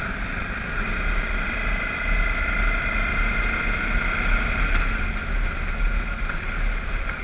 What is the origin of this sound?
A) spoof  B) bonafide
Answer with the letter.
B